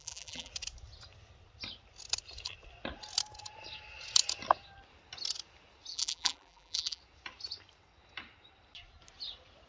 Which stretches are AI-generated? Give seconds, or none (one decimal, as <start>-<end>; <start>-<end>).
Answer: 0.0-0.5; 5.9-7.0